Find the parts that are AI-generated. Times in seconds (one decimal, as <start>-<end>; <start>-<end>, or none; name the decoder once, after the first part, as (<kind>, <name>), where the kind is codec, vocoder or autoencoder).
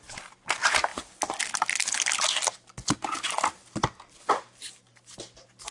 none